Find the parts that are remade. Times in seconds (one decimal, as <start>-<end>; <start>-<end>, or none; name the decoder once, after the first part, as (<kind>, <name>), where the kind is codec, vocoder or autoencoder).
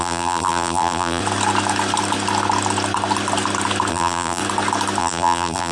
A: 0.0-1.2 (vocoder, BigVGAN v2); 3.9-4.4; 5.0-5.7